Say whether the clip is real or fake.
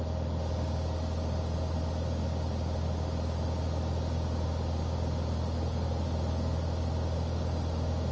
real